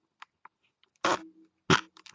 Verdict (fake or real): real